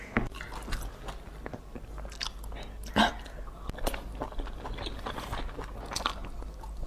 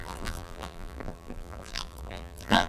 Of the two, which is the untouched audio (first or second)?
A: first